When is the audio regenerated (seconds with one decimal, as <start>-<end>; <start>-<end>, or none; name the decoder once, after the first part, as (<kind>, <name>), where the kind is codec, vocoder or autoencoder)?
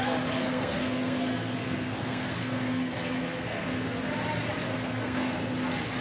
0.4-4.0 (codec, SNAC); 4.7-5.4